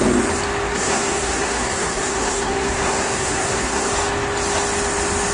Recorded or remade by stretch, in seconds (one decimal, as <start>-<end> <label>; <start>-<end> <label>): 0.0-0.7 recorded; 0.7-3.9 remade; 3.9-5.3 recorded